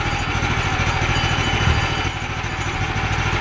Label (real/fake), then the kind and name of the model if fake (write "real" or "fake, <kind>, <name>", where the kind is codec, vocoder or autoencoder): real